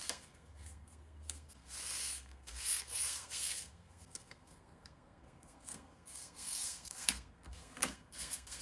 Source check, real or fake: fake